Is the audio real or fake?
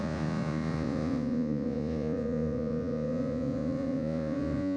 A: fake